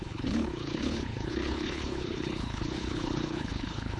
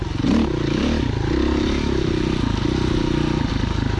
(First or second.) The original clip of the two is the second